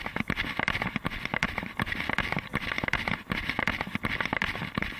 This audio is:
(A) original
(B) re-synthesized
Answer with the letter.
A